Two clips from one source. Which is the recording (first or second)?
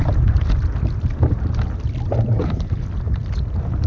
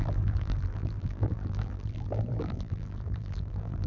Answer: first